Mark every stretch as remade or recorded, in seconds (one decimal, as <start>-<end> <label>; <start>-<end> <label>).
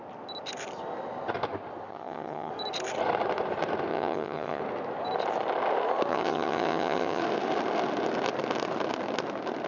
0.0-1.9 recorded; 1.9-2.5 remade; 2.5-3.9 recorded; 3.9-4.6 remade; 4.6-6.1 recorded; 6.1-7.2 remade; 7.2-9.7 recorded